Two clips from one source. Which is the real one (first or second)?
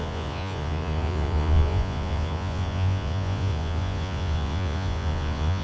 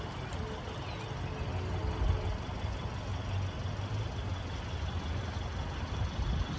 second